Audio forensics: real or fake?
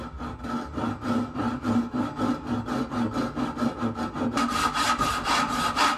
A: real